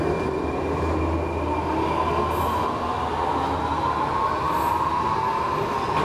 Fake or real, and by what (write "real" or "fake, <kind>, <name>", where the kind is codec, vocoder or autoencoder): real